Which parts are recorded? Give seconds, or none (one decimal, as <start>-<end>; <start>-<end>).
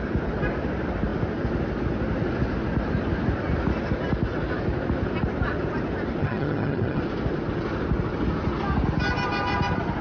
0.0-6.2; 7.0-10.0